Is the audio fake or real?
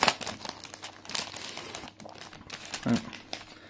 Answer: real